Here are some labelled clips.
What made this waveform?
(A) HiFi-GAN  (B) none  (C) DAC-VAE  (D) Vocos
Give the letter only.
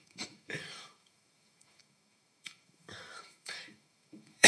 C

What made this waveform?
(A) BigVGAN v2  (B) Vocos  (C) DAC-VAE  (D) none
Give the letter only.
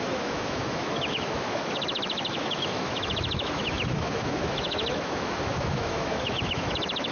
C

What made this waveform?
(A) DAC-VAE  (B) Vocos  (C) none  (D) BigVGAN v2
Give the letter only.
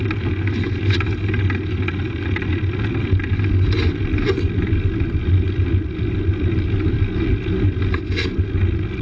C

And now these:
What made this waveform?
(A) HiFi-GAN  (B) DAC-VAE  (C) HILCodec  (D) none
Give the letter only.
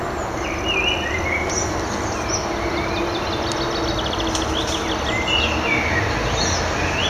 D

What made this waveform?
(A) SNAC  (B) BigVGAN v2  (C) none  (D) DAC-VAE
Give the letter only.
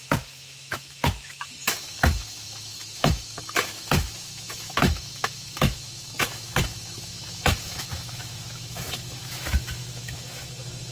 D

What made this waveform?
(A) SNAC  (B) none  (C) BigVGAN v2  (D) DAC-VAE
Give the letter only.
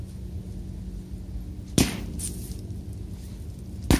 B